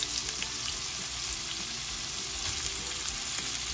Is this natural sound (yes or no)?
yes